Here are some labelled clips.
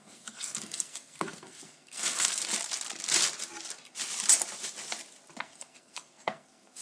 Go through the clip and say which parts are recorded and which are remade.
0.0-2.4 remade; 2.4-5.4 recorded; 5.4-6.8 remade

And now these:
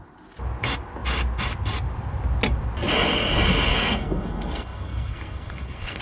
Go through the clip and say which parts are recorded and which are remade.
0.0-3.7 recorded; 3.7-6.0 remade

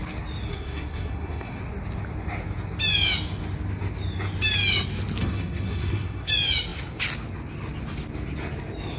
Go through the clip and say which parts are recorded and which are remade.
0.0-0.5 recorded; 0.5-1.6 remade; 1.6-5.2 recorded; 5.2-6.3 remade; 6.3-9.0 recorded

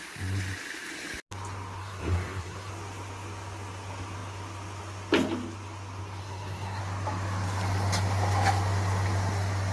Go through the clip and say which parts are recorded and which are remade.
0.0-1.8 recorded; 1.8-2.7 remade; 2.7-6.2 recorded; 6.2-6.8 remade; 6.8-9.7 recorded

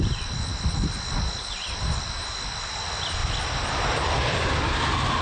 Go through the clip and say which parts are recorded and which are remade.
0.0-5.2 recorded

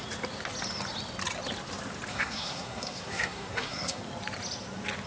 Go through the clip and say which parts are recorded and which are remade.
0.0-2.1 recorded; 2.1-4.0 remade; 4.0-5.1 recorded